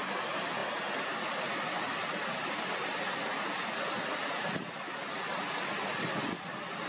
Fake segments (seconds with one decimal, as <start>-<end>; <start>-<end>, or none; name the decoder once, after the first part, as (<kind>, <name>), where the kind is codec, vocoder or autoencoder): none